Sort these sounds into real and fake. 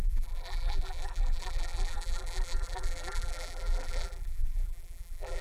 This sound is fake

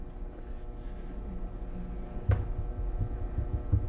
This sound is real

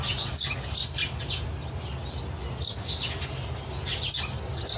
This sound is real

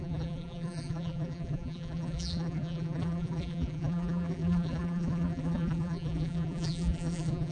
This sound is fake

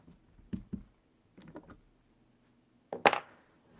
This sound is real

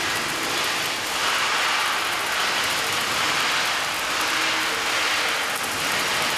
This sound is real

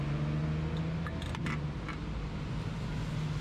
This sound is real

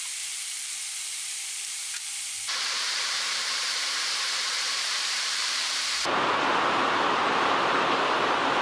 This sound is fake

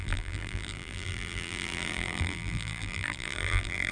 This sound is fake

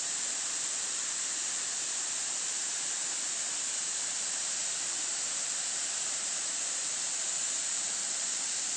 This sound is fake